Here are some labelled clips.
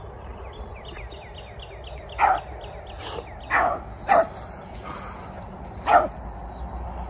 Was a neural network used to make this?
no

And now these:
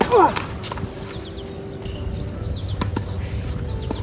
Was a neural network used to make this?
no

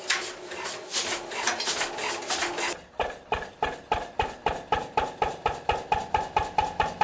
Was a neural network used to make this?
no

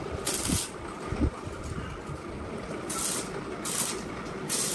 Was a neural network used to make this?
no